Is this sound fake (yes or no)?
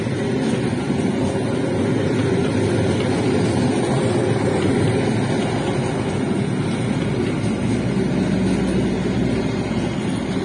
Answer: no